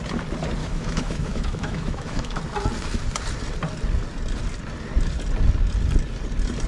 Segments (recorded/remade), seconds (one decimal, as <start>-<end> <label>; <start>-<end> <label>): 0.0-0.6 recorded; 0.6-2.4 remade; 2.4-6.7 recorded